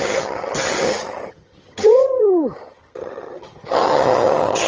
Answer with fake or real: fake